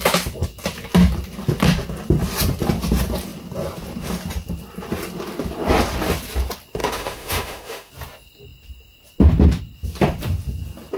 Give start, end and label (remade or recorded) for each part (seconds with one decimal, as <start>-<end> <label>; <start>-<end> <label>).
0.0-6.8 recorded; 6.8-7.9 remade; 7.9-11.0 recorded